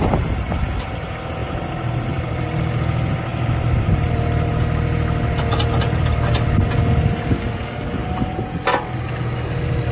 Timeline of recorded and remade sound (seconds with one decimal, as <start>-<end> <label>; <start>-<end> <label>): 0.0-1.4 recorded; 1.4-2.6 remade; 2.6-3.3 recorded; 3.3-4.5 remade; 4.5-9.9 recorded

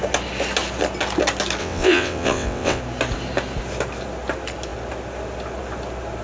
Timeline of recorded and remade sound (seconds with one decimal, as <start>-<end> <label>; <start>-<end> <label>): 0.0-1.6 recorded; 1.6-2.8 remade; 2.8-6.2 recorded

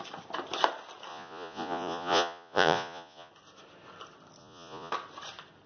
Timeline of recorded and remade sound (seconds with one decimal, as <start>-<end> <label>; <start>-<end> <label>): 0.0-1.1 recorded; 1.1-3.3 remade; 3.3-4.4 recorded; 4.4-4.9 remade; 4.9-5.7 recorded

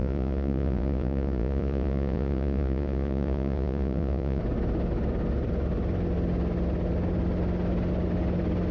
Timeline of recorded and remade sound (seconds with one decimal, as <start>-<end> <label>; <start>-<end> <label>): 0.0-4.4 remade; 4.4-8.7 recorded

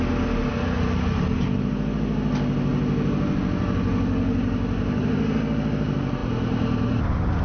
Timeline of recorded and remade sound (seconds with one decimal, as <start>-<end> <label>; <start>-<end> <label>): 0.0-6.2 recorded; 6.2-7.0 remade; 7.0-7.4 recorded

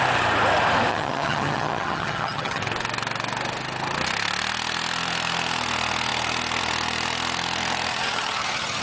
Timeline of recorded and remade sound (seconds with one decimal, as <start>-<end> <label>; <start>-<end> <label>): 0.0-0.9 recorded; 0.9-2.6 remade; 2.6-7.9 recorded; 7.9-8.8 remade

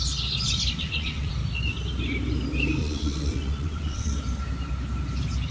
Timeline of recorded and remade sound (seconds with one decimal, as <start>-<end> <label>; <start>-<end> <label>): 0.0-0.8 recorded; 0.8-1.3 remade; 1.3-2.8 recorded; 2.8-4.2 remade; 4.2-5.5 recorded